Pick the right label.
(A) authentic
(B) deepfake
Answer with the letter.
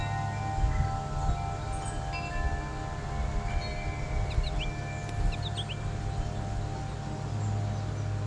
A